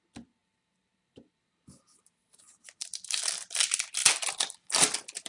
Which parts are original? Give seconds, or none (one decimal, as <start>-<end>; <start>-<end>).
0.0-0.4; 3.2-5.3